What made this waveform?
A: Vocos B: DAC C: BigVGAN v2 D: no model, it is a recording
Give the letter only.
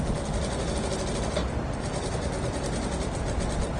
D